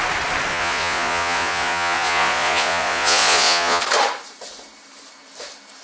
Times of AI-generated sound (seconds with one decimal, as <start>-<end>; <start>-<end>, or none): 0.5-3.8